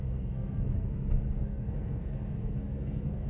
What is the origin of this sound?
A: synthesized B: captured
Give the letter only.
A